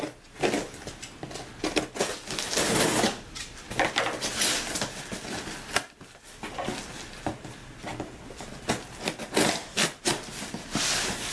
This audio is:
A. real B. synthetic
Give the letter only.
A